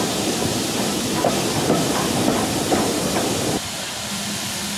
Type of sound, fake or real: real